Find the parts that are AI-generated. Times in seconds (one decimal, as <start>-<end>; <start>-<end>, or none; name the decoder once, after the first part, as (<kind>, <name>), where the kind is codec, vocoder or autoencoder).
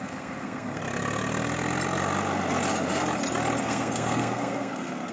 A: 0.0-0.8 (codec, SNAC); 3.6-5.1